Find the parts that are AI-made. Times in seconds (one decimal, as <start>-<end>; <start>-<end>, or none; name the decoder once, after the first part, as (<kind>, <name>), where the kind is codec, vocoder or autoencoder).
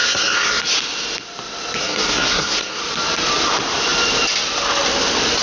0.0-0.6 (codec, SNAC); 1.8-2.8